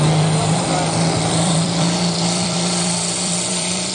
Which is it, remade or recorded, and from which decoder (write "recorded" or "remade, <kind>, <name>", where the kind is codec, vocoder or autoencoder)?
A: remade, vocoder, BigVGAN v2